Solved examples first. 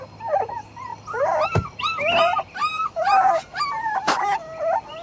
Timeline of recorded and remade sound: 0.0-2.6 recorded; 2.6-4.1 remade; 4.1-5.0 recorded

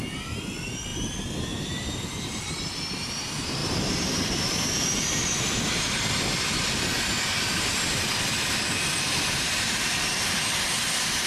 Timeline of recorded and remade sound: 0.0-0.9 recorded; 0.9-2.5 remade; 2.5-3.6 recorded; 3.6-5.0 remade; 5.0-11.3 recorded

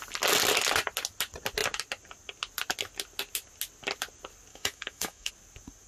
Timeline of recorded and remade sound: 0.0-4.5 recorded; 4.5-5.3 remade; 5.3-5.9 recorded